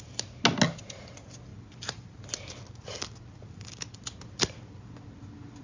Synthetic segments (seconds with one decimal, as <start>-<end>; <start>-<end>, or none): none